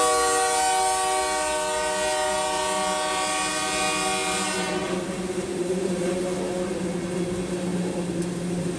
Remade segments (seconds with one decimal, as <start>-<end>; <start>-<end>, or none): 5.5-6.2